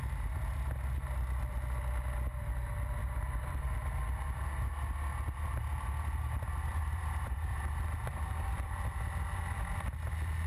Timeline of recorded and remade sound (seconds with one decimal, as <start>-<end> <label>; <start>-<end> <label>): 0.0-3.0 recorded; 3.0-3.7 remade; 3.7-6.7 recorded; 6.7-7.7 remade; 7.7-10.5 recorded